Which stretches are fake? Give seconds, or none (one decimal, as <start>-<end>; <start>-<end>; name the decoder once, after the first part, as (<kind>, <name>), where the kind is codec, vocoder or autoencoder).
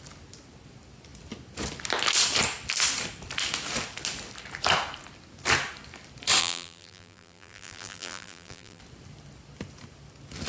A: 6.4-8.8 (vocoder, BigVGAN v2)